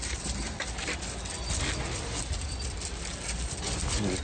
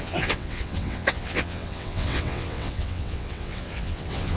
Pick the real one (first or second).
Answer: first